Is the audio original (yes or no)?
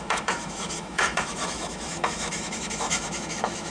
no